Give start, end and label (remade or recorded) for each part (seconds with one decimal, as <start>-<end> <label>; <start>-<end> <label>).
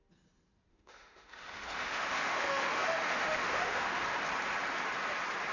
0.0-0.7 recorded; 0.7-4.0 remade; 4.0-5.5 recorded